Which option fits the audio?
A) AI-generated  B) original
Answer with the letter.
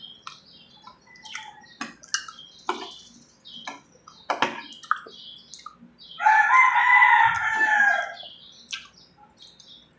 B